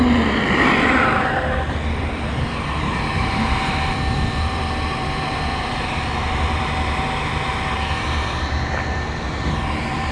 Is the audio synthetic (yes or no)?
yes